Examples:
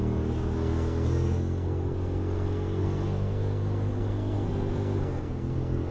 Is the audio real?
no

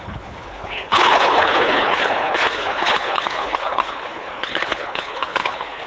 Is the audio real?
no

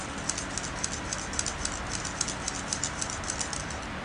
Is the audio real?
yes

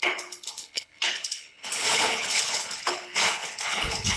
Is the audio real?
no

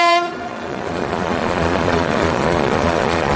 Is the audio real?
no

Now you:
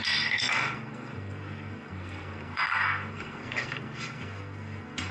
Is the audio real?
no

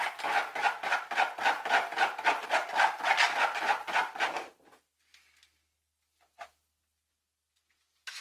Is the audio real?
yes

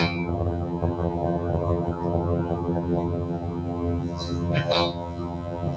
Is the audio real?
no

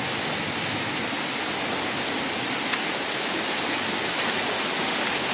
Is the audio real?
yes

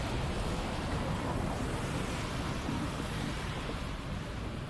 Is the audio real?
no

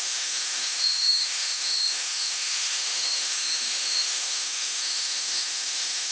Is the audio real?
no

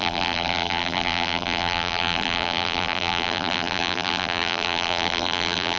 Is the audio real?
no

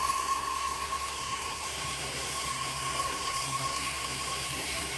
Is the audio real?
no